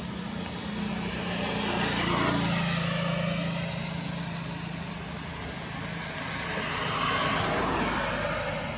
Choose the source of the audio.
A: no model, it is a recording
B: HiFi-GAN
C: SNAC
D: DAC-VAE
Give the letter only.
A